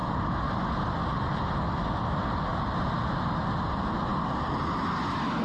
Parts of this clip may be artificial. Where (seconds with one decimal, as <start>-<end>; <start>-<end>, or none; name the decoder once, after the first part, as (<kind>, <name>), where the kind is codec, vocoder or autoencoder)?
none